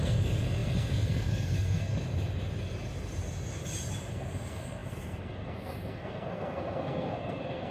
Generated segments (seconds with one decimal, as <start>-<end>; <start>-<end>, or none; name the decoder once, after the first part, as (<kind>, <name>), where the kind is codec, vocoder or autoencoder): 0.0-1.9 (codec, SNAC); 4.1-7.7

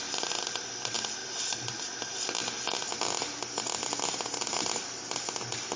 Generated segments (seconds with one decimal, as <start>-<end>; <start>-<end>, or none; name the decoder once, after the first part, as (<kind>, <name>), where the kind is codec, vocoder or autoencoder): none

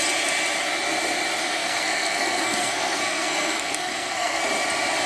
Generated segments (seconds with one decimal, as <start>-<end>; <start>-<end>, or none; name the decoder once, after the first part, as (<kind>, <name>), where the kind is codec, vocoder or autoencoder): 1.4-4.4 (codec, SNAC)

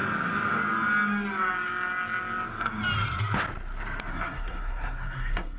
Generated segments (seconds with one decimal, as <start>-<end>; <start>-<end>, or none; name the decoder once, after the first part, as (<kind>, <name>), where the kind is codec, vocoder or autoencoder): 4.1-5.6 (codec, SNAC)

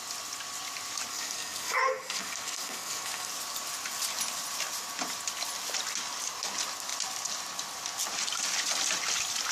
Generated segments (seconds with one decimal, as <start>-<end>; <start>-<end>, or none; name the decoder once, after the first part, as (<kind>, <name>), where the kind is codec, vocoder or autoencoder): 1.1-3.3 (codec, SNAC)

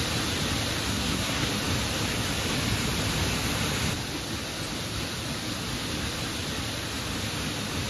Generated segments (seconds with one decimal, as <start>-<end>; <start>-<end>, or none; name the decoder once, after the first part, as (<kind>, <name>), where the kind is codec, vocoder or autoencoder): 0.9-1.5 (codec, SNAC)

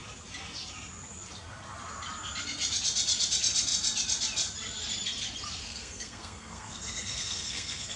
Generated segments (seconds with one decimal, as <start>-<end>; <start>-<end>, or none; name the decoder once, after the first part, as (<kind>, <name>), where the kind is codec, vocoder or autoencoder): 5.6-8.0 (codec, SNAC)